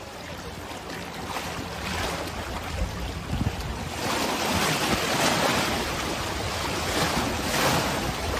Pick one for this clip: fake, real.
real